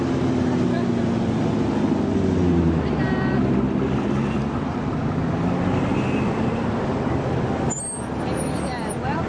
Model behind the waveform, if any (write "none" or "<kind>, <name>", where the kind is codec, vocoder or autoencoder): none